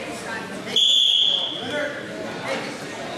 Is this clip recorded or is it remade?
recorded